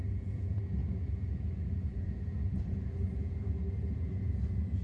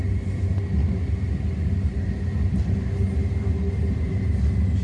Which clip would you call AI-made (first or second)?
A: first